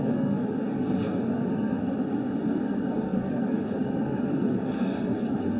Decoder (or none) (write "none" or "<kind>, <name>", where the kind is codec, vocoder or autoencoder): codec, SNAC